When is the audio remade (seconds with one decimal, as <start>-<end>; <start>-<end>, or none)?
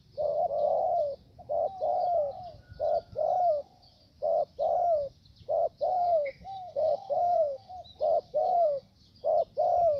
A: 5.9-7.7; 8.3-8.9